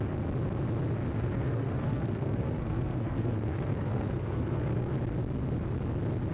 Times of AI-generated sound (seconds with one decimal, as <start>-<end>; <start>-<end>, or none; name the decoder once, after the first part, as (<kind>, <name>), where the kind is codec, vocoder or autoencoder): 1.1-4.9 (codec, SNAC)